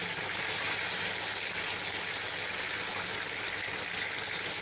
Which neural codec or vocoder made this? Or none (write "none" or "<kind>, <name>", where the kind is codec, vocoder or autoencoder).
none